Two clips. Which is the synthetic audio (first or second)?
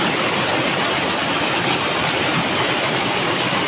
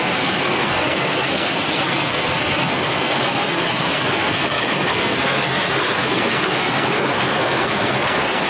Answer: second